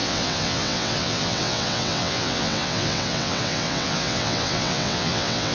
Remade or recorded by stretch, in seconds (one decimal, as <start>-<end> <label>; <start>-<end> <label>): 0.0-5.5 remade